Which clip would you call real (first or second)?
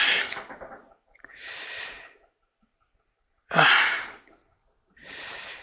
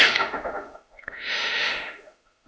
first